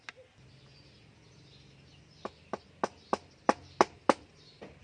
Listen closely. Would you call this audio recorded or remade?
recorded